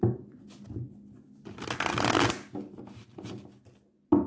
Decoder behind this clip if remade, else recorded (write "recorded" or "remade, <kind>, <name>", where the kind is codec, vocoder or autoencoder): recorded